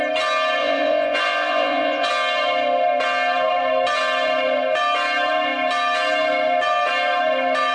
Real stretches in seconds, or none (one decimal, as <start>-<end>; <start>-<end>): 0.0-0.6; 2.1-7.7